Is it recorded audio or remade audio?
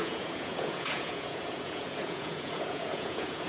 remade